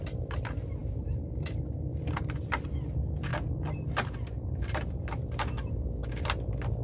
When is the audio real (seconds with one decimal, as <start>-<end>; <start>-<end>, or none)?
0.0-6.8

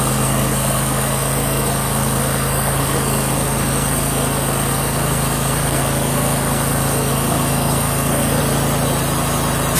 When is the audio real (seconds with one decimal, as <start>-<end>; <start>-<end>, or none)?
8.4-9.8

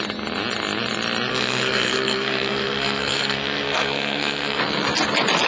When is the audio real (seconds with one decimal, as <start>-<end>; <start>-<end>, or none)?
0.0-1.3; 4.6-5.5

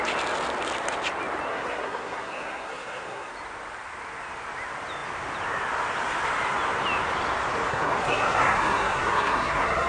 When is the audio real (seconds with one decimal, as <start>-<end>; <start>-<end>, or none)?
0.0-1.5; 3.3-7.7

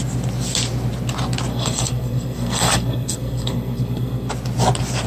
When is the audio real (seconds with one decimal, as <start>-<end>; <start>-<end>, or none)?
0.0-1.5; 4.3-5.1

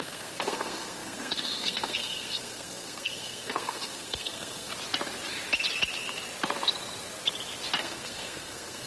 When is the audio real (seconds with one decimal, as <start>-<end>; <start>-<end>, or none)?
4.7-7.8

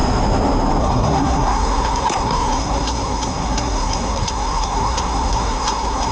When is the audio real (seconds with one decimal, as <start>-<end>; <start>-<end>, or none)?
0.0-0.8